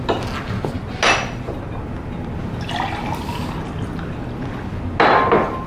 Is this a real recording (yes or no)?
yes